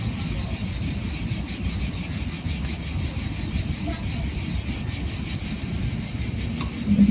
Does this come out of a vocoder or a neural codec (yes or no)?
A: no